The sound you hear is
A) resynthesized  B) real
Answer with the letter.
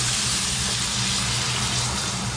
A